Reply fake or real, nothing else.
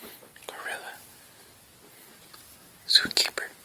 real